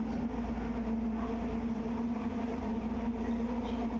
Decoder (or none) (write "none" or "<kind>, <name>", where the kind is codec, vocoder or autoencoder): none